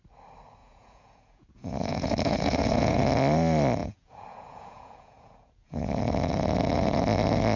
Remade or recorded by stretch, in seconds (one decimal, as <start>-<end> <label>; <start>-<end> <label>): 0.0-0.6 recorded; 0.6-3.0 remade; 3.0-3.8 recorded; 3.8-6.0 remade; 6.0-7.6 recorded